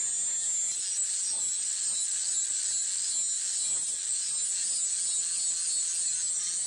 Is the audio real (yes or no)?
yes